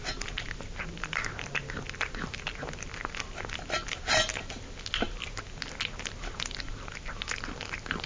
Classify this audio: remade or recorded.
recorded